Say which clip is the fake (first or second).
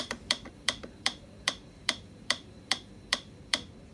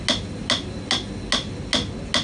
first